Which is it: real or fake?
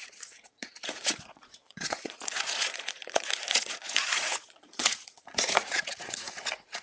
fake